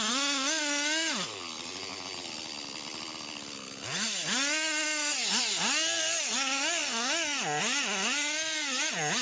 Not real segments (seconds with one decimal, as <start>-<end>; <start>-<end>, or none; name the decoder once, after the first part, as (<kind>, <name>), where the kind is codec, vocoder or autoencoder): none